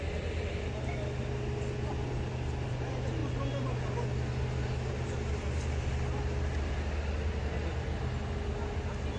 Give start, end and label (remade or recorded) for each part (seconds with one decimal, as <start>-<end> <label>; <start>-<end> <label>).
0.0-9.2 recorded